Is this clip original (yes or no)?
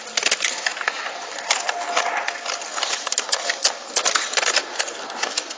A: yes